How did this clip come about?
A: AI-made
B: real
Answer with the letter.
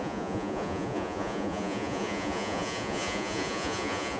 A